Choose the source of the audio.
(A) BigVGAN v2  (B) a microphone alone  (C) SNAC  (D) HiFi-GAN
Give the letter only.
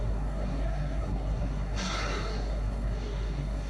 C